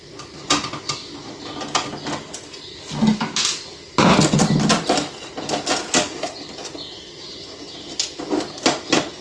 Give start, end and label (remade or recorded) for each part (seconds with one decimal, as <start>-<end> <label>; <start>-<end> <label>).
0.0-9.2 recorded